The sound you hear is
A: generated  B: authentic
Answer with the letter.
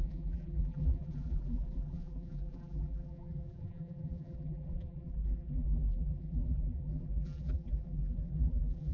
A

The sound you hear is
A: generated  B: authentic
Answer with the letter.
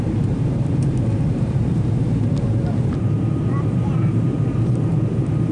A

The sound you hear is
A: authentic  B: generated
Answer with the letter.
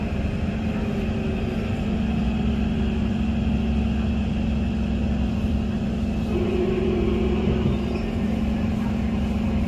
A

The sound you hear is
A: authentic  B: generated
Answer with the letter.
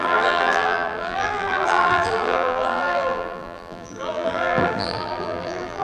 B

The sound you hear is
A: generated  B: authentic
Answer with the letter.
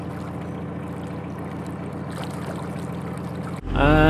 B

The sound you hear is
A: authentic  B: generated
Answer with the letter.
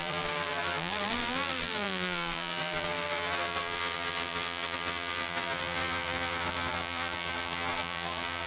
B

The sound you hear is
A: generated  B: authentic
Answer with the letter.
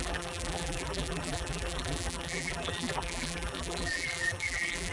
A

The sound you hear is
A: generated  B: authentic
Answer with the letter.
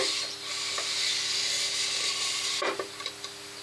B